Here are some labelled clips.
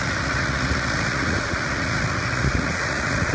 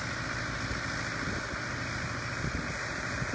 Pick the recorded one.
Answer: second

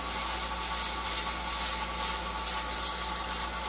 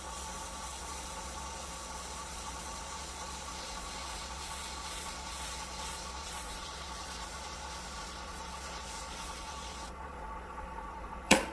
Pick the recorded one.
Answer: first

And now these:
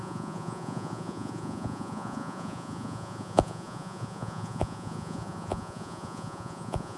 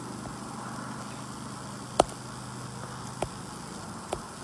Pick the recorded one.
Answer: second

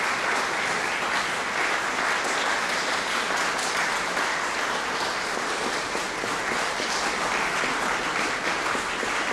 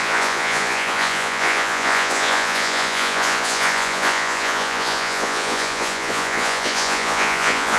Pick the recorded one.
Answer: first